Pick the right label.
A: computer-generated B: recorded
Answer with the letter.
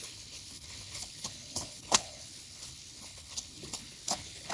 A